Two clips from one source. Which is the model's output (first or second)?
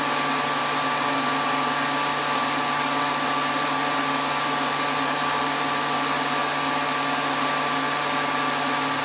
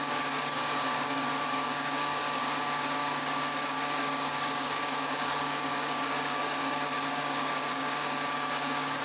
second